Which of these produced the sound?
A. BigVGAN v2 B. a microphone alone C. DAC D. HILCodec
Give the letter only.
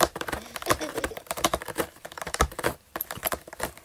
A